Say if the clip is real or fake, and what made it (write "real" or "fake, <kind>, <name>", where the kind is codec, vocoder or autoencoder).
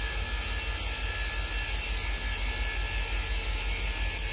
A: real